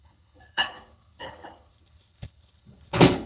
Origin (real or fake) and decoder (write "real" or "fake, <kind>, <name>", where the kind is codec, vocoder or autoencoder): fake, codec, HILCodec